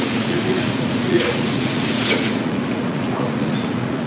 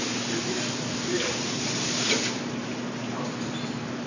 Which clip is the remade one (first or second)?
first